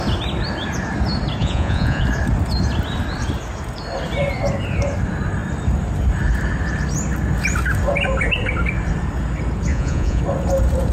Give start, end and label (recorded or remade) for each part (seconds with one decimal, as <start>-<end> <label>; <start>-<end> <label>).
0.0-1.4 recorded; 1.4-2.0 remade; 2.0-9.7 recorded; 9.7-10.2 remade; 10.2-10.9 recorded